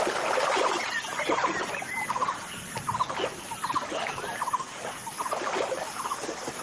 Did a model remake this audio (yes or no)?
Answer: yes